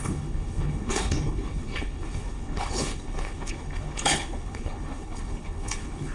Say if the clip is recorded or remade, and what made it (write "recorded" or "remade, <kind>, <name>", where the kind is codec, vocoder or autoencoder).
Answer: remade, codec, HILCodec